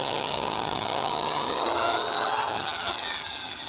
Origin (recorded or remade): remade